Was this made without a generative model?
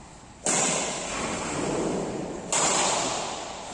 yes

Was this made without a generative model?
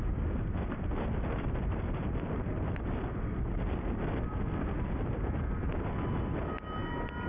yes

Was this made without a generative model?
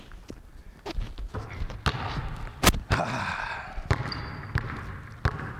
yes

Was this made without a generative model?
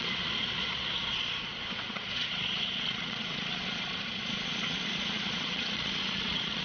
no